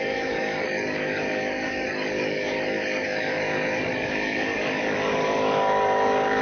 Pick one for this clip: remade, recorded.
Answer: remade